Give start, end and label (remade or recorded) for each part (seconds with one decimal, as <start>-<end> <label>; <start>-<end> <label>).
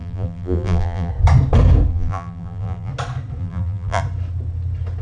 0.0-1.1 remade; 1.1-1.9 recorded; 1.9-2.9 remade; 2.9-3.4 recorded; 3.4-4.0 remade; 4.0-5.0 recorded